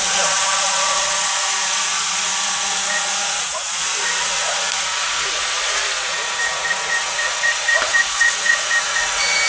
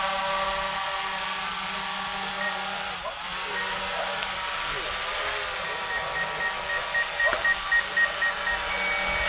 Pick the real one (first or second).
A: second